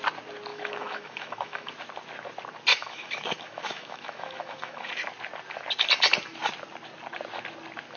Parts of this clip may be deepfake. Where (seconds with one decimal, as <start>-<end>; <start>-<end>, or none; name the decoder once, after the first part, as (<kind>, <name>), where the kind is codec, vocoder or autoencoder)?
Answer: 0.5-1.7 (autoencoder, DAC-VAE); 2.7-4.9